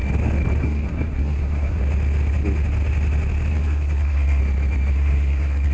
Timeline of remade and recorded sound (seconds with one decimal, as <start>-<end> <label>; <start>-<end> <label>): 0.0-0.6 recorded; 0.6-1.8 remade; 1.8-3.5 recorded; 3.5-4.4 remade; 4.4-4.9 recorded; 4.9-5.7 remade

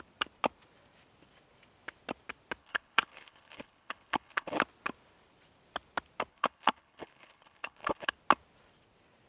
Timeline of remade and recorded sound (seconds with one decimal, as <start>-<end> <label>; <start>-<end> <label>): 0.0-2.6 recorded; 2.6-4.6 remade; 4.6-6.3 recorded; 6.3-8.1 remade; 8.1-9.3 recorded

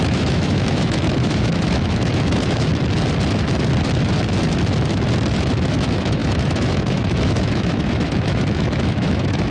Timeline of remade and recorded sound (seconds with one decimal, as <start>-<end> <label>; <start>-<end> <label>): 0.0-2.7 remade; 2.7-5.7 recorded; 5.7-9.5 remade

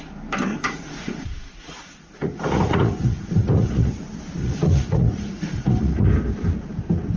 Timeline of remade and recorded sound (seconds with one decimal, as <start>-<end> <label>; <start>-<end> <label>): 0.0-0.5 recorded; 0.5-3.9 remade; 3.9-4.4 recorded; 4.4-6.1 remade; 6.1-7.2 recorded

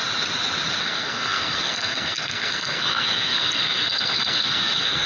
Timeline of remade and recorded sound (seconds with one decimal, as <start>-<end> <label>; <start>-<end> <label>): 0.0-0.8 recorded; 0.8-5.1 remade

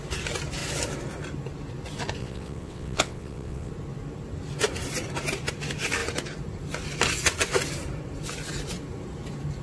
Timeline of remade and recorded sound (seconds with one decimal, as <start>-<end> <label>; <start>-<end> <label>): 0.0-2.2 recorded; 2.2-3.7 remade; 3.7-9.6 recorded

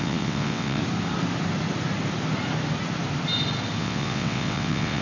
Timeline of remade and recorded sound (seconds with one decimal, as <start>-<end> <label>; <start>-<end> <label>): 0.0-0.8 remade; 0.8-3.8 recorded; 3.8-5.0 remade

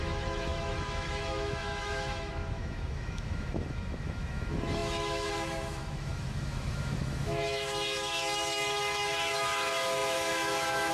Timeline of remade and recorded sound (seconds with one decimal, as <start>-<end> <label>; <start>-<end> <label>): 0.0-10.9 remade